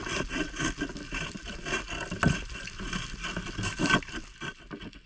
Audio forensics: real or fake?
real